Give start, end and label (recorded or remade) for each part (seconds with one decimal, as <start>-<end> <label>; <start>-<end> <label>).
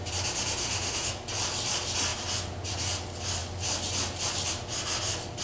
0.0-0.6 recorded; 0.6-1.1 remade; 1.1-5.4 recorded